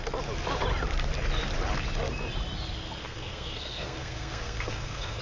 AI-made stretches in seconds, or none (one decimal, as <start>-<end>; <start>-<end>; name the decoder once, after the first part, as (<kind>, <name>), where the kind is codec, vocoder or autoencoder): 3.0-5.2 (codec, SNAC)